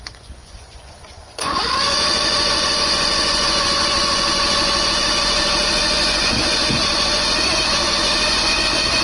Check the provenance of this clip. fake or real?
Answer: fake